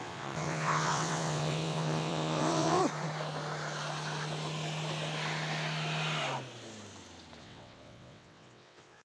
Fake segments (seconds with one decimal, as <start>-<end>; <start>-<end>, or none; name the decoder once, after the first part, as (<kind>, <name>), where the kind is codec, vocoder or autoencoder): 0.0-2.8 (vocoder, WaveNeXt); 7.4-9.0